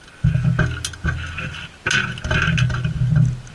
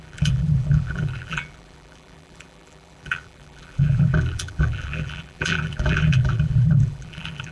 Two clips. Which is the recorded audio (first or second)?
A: first